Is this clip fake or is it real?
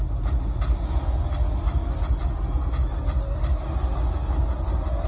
real